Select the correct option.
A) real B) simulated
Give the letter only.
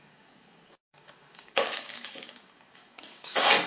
B